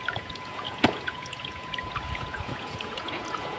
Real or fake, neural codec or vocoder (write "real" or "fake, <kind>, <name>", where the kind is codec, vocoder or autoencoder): fake, vocoder, Vocos